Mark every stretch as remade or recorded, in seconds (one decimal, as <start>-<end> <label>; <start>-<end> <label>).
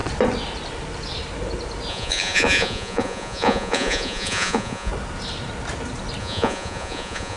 0.0-1.9 recorded; 1.9-4.9 remade; 4.9-6.2 recorded; 6.2-7.4 remade